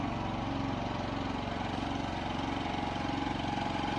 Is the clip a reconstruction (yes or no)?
no